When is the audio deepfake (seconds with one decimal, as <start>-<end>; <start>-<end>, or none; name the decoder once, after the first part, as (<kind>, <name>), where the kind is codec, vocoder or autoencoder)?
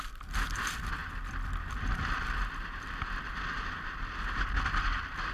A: 0.0-1.0 (vocoder, BigVGAN v2); 1.7-5.3